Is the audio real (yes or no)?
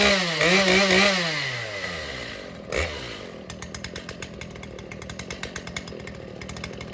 yes